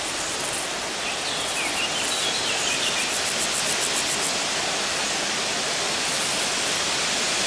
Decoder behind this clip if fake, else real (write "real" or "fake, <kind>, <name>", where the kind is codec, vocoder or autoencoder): real